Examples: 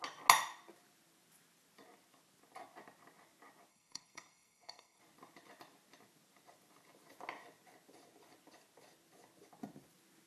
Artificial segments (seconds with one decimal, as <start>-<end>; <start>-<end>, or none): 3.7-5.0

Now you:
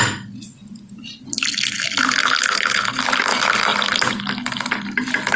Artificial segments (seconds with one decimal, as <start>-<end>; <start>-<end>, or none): none

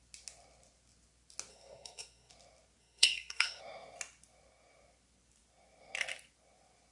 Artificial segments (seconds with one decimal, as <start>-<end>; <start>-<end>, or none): 1.5-2.3; 2.8-3.6

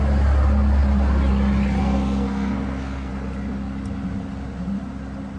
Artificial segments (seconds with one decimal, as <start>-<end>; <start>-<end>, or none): 1.8-3.1

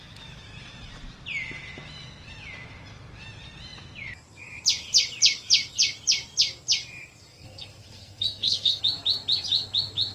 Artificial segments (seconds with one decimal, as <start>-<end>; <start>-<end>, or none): 7.3-8.8

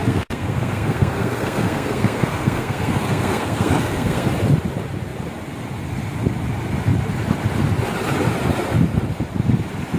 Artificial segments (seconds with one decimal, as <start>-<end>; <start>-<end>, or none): 0.0-4.3

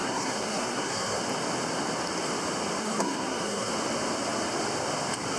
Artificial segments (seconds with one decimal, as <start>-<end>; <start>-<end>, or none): 0.0-1.2; 2.8-3.7

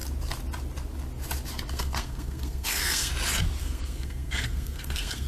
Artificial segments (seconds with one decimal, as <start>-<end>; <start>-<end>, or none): 1.7-3.1; 3.6-5.3